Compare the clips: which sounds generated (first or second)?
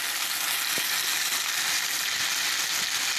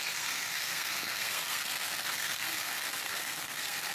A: second